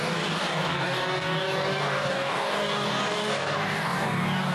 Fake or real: fake